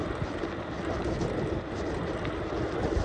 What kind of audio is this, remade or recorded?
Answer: remade